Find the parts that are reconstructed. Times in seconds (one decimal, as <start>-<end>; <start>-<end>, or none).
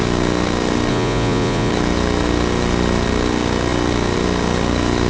0.9-1.7